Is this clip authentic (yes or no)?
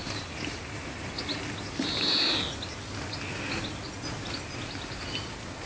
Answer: yes